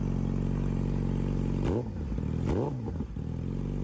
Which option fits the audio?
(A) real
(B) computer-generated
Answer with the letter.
A